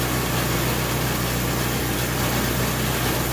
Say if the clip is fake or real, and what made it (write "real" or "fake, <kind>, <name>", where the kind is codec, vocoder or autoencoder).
real